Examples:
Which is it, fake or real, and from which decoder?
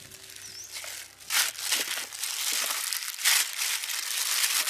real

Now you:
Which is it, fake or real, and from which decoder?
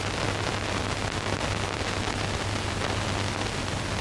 real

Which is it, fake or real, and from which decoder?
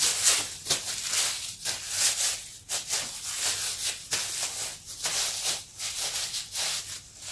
real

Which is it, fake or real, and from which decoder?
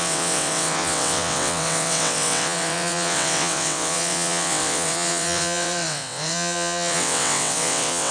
fake, vocoder, WaveNeXt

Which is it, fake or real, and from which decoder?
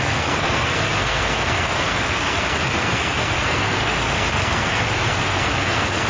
fake, codec, SNAC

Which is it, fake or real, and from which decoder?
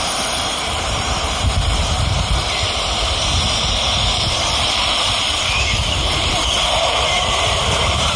fake, vocoder, BigVGAN v2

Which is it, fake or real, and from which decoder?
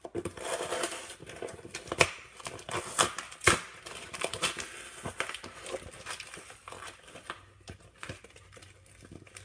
real